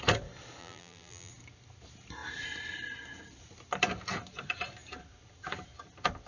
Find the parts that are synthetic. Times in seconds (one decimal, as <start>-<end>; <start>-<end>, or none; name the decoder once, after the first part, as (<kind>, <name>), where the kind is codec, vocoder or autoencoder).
0.6-1.3 (vocoder, BigVGAN v2)